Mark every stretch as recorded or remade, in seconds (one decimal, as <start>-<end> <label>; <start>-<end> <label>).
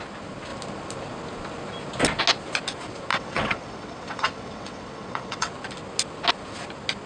0.0-3.1 recorded; 3.1-5.5 remade; 5.5-7.1 recorded